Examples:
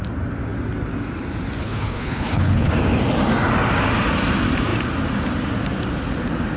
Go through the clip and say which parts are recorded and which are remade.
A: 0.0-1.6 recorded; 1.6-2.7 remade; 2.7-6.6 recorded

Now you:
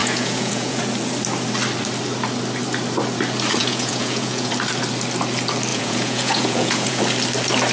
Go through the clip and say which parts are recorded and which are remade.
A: 0.0-0.8 remade; 0.8-3.6 recorded; 3.6-4.5 remade; 4.5-5.7 recorded; 5.7-7.0 remade; 7.0-7.7 recorded

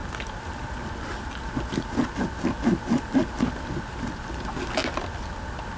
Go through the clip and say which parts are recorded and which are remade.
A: 0.0-5.8 recorded

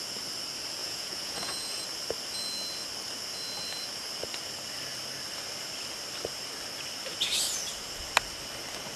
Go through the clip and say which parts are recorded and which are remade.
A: 0.0-0.8 recorded; 0.8-1.8 remade; 1.8-9.0 recorded

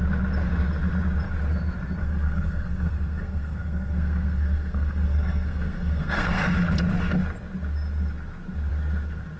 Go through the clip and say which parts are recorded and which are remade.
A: 0.0-2.0 recorded; 2.0-6.4 remade; 6.4-9.4 recorded